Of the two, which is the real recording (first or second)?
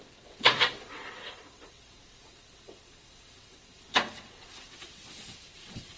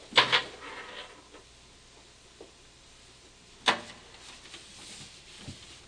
second